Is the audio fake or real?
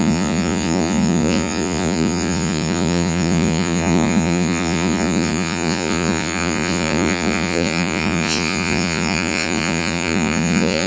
fake